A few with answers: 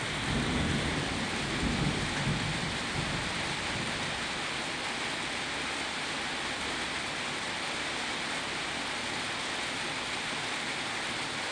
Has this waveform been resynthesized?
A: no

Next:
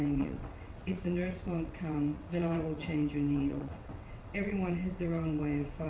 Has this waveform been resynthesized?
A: yes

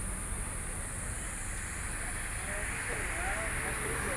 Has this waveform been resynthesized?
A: no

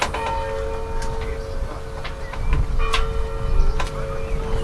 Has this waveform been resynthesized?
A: no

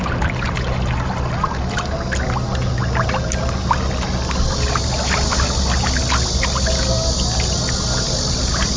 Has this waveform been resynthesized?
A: no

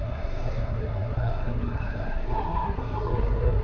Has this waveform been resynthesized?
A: yes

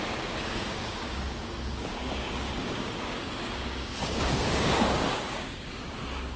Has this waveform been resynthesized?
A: yes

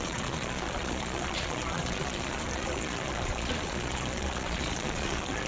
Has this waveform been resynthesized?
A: yes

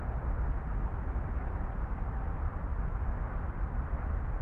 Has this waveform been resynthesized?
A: no